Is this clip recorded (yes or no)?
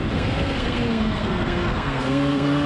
no